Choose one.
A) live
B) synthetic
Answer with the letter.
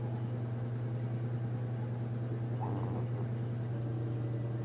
A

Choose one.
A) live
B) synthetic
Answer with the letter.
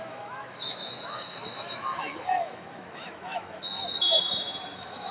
B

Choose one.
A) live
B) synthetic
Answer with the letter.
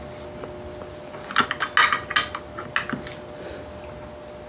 A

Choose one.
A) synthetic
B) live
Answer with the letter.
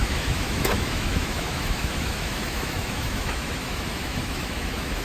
A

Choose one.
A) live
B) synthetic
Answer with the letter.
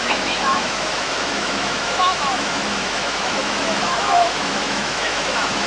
B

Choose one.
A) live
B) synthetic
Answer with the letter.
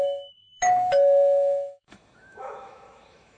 B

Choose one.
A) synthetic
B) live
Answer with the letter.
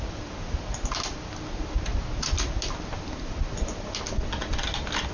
B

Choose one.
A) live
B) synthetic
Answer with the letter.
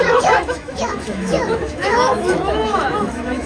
B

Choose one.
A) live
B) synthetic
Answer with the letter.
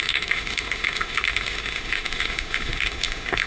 B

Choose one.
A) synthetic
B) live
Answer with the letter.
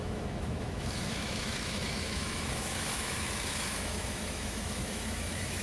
A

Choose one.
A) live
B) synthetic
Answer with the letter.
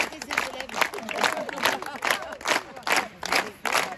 A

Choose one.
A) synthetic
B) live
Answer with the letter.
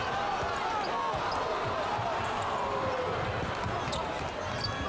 B